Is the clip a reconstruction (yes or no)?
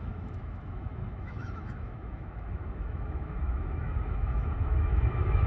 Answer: yes